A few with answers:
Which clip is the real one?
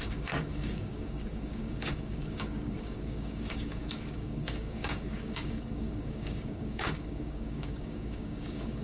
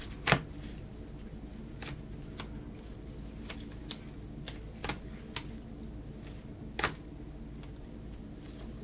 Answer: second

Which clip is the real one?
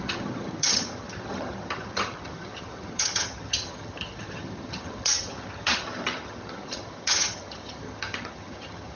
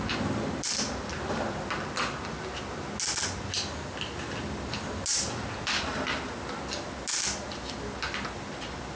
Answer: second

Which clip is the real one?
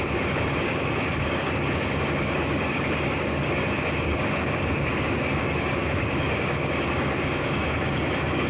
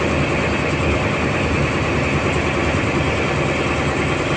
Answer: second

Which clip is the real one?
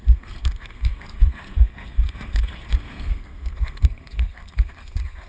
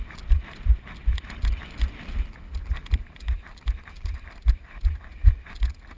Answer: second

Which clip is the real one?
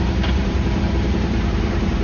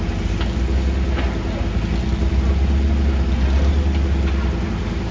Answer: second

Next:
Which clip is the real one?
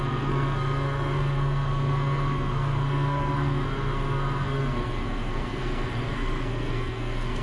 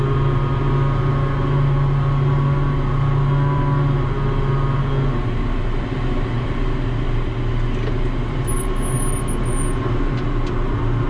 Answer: second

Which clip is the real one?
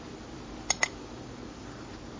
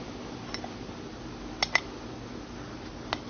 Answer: second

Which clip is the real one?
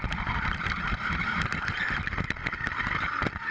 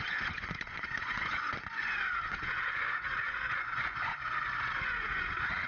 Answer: first